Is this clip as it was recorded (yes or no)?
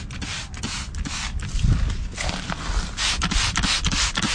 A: yes